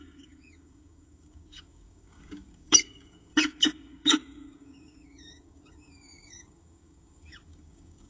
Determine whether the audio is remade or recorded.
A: remade